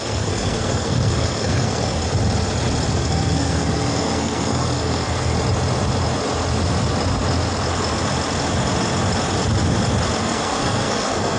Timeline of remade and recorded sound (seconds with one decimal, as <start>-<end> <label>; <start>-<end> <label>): 0.0-2.0 remade; 2.0-2.9 recorded; 2.9-5.3 remade; 5.3-10.2 recorded; 10.2-11.4 remade